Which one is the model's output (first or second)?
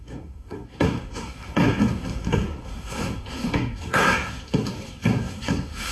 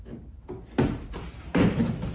first